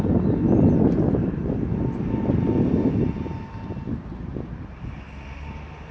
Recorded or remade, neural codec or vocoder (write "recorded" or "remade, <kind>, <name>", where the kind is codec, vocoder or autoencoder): recorded